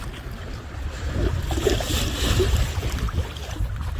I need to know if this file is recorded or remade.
remade